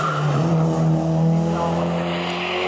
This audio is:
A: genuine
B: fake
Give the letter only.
A